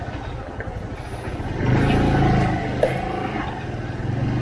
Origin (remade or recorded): recorded